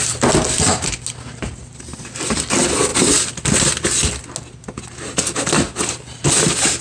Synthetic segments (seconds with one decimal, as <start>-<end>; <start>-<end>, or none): none